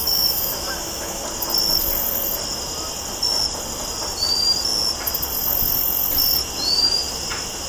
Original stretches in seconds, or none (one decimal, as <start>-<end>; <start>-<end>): 1.2-7.7

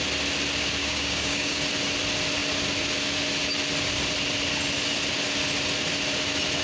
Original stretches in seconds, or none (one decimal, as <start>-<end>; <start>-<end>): 0.0-0.8; 1.6-6.6

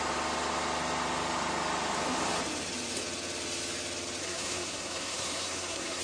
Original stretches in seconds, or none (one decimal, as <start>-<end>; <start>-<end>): 0.0-4.2